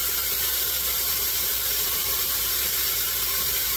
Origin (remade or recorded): remade